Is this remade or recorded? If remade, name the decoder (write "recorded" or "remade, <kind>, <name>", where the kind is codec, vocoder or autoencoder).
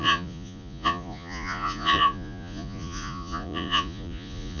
remade, vocoder, Vocos